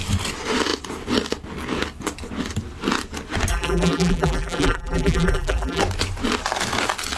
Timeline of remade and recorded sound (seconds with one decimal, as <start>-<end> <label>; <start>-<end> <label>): 0.0-3.5 recorded; 3.5-5.8 remade; 5.8-7.2 recorded